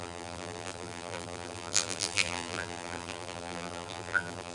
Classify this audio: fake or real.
fake